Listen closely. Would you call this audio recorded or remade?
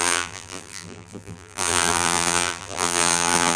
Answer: remade